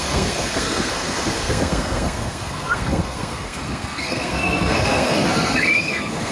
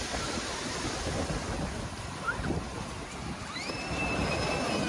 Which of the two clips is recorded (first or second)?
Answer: second